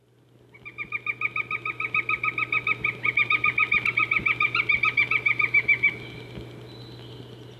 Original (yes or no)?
yes